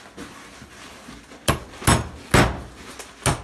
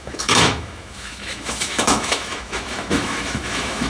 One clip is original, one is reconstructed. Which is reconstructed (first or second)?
second